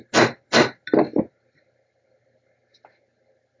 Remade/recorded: recorded